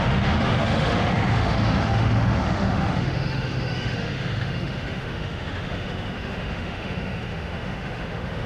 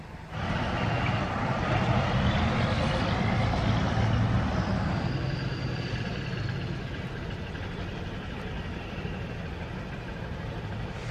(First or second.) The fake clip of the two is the first